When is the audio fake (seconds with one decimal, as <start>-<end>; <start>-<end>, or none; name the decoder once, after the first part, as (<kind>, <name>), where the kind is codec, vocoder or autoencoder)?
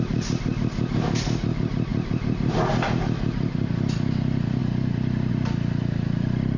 1.9-2.7 (vocoder, BigVGAN v2)